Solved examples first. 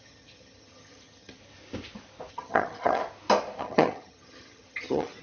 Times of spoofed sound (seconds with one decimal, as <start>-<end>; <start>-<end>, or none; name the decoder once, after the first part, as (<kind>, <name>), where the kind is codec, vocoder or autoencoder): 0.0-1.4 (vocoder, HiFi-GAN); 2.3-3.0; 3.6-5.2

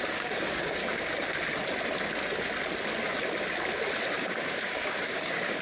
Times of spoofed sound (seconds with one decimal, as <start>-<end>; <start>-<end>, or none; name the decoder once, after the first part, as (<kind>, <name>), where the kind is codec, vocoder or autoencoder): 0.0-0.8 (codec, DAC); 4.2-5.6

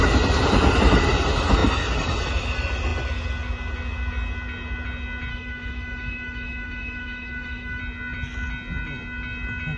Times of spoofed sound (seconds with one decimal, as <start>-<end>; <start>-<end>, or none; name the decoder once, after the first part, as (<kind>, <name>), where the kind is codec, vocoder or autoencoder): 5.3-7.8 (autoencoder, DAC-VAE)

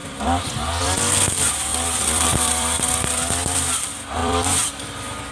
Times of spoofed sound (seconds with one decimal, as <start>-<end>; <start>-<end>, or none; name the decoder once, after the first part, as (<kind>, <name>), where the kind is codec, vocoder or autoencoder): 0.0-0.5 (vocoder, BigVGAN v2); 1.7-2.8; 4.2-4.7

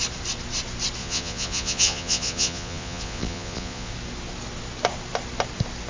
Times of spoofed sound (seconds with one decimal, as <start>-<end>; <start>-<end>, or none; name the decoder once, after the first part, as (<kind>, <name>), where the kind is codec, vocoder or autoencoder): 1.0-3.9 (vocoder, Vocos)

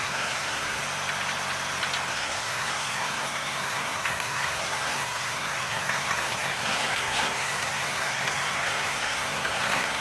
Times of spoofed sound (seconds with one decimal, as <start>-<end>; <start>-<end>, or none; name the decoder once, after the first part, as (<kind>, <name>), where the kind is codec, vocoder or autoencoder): 0.0-0.8 (codec, SNAC); 2.1-10.0

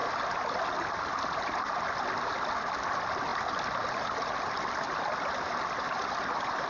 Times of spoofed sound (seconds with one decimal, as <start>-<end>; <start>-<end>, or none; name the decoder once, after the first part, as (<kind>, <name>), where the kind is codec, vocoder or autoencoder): none

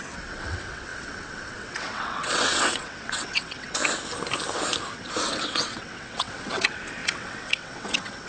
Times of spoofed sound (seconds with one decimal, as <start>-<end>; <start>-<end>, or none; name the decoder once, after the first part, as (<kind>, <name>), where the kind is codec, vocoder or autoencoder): 0.0-3.8 (vocoder, WaveNeXt); 5.2-8.3